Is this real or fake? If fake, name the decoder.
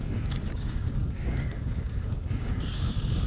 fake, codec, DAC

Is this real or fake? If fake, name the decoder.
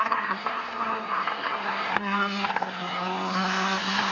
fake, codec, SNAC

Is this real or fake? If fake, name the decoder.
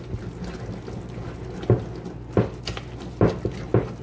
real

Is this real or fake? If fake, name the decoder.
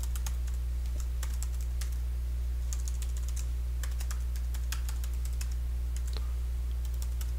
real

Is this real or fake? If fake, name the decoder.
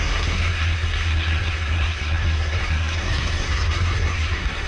fake, codec, SNAC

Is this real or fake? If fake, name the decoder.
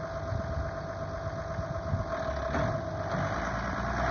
real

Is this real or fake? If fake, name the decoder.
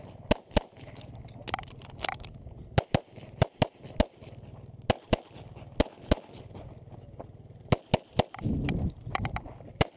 real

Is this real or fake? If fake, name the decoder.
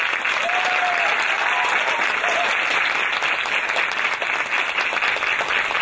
real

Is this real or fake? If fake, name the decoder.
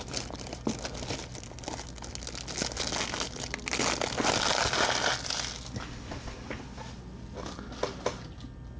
real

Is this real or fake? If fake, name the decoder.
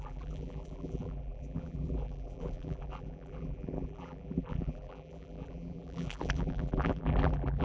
fake, vocoder, BigVGAN v2